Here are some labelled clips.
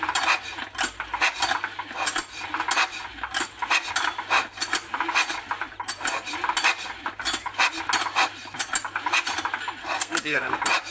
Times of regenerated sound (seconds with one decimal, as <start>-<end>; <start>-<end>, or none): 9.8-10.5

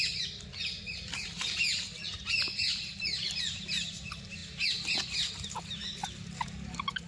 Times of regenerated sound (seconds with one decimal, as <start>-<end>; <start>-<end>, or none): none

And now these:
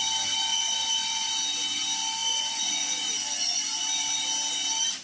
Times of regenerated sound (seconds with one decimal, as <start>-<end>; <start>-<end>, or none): 0.5-1.3; 2.2-3.8

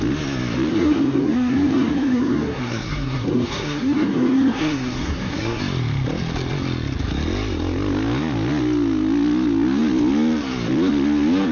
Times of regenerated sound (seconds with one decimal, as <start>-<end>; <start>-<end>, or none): 0.7-5.6

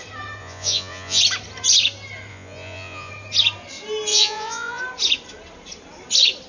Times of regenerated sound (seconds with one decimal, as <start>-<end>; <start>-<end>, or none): 0.4-1.2; 2.3-3.1; 4.1-4.8

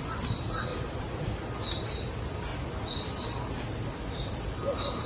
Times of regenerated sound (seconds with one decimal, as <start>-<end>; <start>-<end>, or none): 0.7-2.0

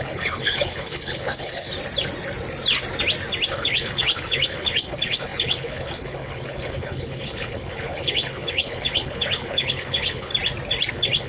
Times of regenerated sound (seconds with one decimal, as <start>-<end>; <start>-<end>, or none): 0.0-1.7; 3.5-10.3; 10.9-11.3